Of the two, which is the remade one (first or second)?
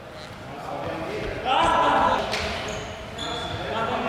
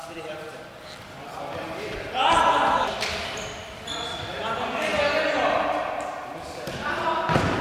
second